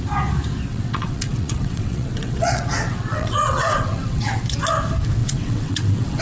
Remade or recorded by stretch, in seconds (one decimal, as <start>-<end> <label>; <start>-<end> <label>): 0.0-0.7 recorded; 0.7-4.4 remade; 4.4-5.2 recorded; 5.2-6.2 remade